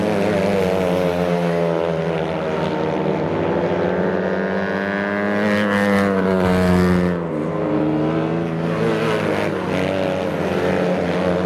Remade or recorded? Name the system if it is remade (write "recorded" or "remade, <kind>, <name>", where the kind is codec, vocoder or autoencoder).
recorded